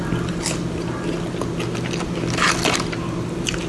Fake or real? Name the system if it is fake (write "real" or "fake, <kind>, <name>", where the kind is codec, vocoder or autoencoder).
real